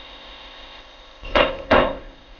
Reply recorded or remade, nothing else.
remade